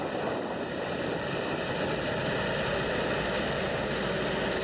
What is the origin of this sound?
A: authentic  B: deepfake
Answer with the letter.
A